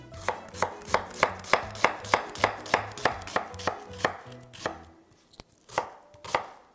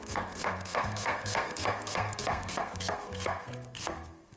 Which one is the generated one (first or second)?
second